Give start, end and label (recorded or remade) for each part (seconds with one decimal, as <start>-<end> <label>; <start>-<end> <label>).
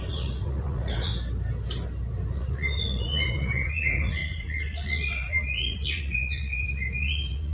0.0-1.1 remade; 1.1-2.3 recorded; 2.3-7.5 remade